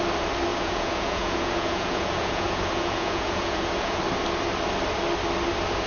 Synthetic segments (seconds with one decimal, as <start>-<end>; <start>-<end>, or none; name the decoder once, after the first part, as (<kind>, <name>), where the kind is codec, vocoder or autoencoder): 0.5-4.0 (vocoder, Vocos)